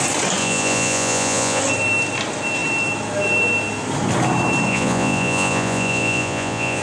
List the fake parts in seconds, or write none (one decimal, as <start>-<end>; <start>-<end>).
0.4-1.6; 4.7-6.8